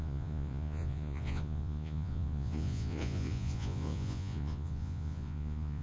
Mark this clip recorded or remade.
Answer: remade